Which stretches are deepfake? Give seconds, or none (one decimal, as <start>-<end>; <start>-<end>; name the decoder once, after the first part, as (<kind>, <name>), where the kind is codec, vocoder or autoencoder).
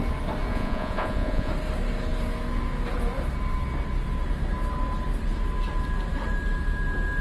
0.5-1.5 (vocoder, Vocos)